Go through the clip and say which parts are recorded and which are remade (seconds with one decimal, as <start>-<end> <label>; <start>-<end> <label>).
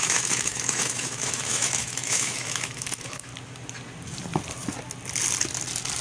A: 0.0-3.3 remade; 3.3-6.0 recorded